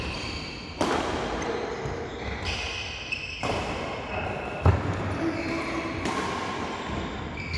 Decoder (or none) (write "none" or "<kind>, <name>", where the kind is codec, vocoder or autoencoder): none